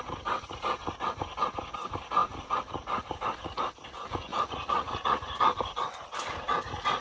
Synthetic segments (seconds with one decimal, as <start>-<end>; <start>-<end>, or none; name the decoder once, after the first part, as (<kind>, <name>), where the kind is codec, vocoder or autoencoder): 4.3-5.4 (vocoder, Vocos)